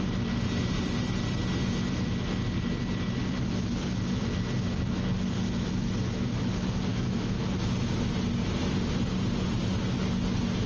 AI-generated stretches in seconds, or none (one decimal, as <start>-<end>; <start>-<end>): 6.9-7.7